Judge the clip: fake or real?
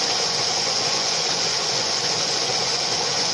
fake